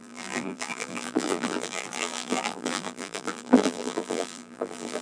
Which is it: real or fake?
fake